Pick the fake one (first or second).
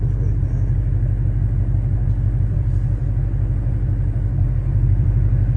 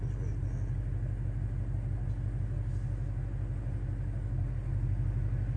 first